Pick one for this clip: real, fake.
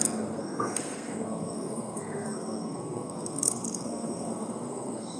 fake